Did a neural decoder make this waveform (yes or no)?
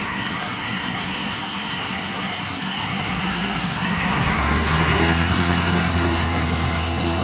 yes